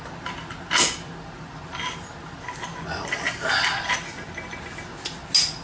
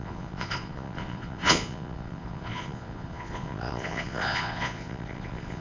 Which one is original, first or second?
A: first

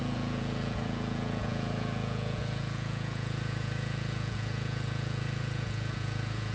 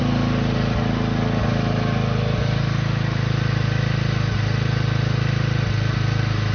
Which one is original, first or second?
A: second